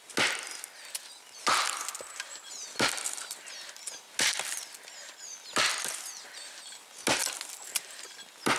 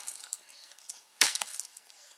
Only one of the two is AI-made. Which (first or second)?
second